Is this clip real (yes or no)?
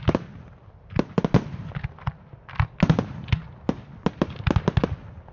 yes